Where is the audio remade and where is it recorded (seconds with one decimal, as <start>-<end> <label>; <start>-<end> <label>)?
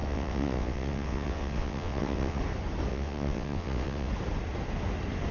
0.0-2.4 remade; 2.4-2.9 recorded; 2.9-4.1 remade; 4.1-5.3 recorded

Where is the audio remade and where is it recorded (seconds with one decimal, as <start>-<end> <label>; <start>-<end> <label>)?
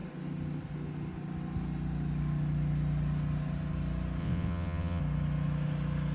0.0-4.2 recorded; 4.2-5.0 remade; 5.0-6.1 recorded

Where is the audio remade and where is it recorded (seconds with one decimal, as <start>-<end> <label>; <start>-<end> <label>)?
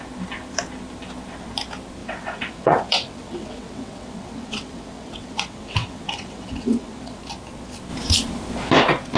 0.0-2.0 recorded; 2.0-7.2 remade; 7.2-9.2 recorded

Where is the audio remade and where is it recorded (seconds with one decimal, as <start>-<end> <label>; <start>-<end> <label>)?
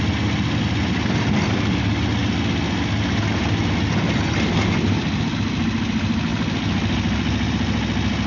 0.0-8.3 recorded